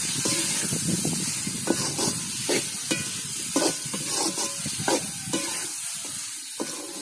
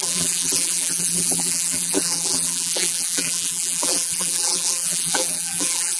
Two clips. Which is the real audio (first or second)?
first